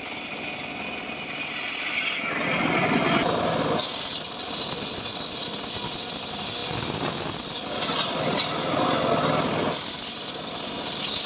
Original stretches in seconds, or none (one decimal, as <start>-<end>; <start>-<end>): 0.0-11.3